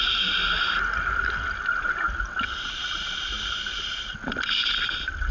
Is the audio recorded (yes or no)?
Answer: yes